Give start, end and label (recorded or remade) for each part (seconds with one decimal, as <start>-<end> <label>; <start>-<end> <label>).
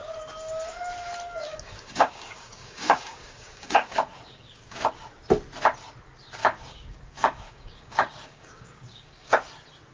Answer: 0.0-1.5 recorded; 1.5-4.9 remade; 4.9-6.4 recorded; 6.4-9.3 remade; 9.3-9.9 recorded